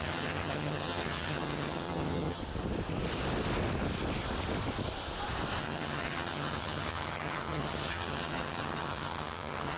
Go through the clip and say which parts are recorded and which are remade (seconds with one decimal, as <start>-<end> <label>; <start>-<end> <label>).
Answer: 0.0-2.4 remade; 2.4-5.6 recorded; 5.6-9.8 remade